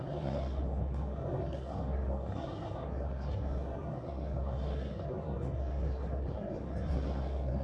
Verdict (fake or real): fake